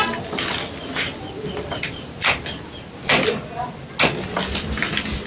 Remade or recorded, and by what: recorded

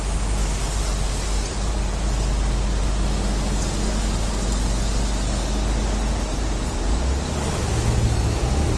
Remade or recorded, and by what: recorded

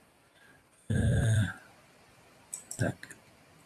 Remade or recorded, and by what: remade, vocoder, BigVGAN v2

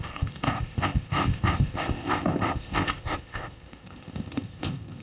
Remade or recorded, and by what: remade, codec, ZipCodec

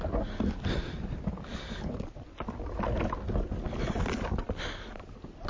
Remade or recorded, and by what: recorded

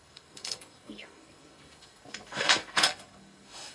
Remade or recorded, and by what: remade, codec, SNAC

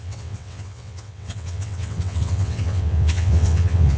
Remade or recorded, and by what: remade, vocoder, WaveNeXt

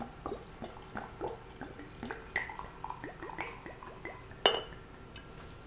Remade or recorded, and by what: recorded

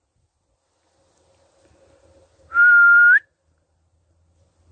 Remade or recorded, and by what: recorded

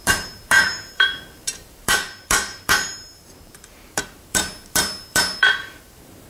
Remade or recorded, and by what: remade, vocoder, BigVGAN v2